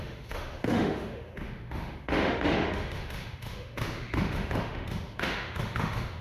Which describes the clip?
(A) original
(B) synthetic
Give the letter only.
B